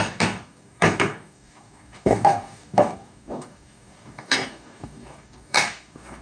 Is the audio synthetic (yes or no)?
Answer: yes